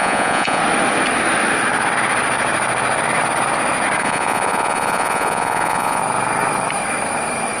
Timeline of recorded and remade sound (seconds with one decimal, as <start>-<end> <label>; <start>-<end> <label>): 0.0-0.6 remade; 0.6-4.0 recorded; 4.0-6.0 remade; 6.0-7.6 recorded